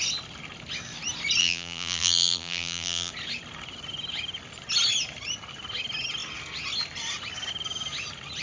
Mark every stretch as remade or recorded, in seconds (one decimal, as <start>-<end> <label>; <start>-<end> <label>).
0.0-1.4 recorded; 1.4-3.1 remade; 3.1-8.4 recorded